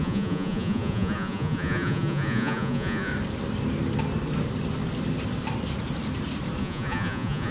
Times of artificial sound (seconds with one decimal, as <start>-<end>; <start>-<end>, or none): 0.0-3.1; 6.6-7.5